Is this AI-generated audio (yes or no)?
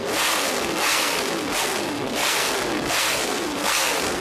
yes